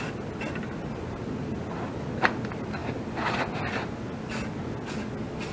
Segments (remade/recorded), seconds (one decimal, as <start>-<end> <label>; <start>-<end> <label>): 0.0-5.5 recorded

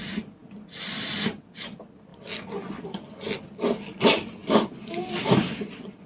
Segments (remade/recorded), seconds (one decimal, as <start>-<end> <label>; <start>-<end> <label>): 0.0-6.1 recorded

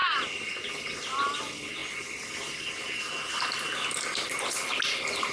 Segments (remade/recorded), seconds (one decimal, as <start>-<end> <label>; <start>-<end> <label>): 0.0-5.3 recorded

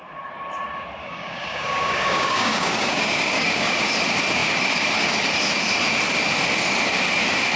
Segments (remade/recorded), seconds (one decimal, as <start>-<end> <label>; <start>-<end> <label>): 0.0-1.0 recorded; 1.0-3.8 remade; 3.8-7.6 recorded

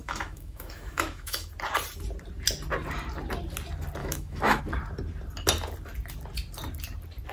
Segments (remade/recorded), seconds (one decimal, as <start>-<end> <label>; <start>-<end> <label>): 0.0-1.5 remade; 1.5-4.0 recorded; 4.0-4.6 remade; 4.6-7.3 recorded

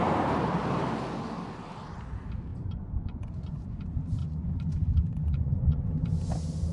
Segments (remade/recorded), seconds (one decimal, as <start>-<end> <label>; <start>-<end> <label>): 0.0-2.5 recorded; 2.5-3.8 remade; 3.8-4.2 recorded; 4.2-5.9 remade; 5.9-6.7 recorded

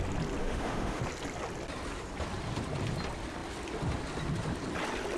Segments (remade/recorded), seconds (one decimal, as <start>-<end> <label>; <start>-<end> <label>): 0.0-0.4 recorded; 0.4-1.0 remade; 1.0-5.2 recorded

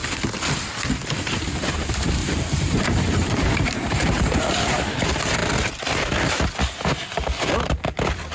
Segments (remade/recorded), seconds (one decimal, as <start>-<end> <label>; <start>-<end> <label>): 0.0-2.2 recorded; 2.2-4.5 remade; 4.5-8.3 recorded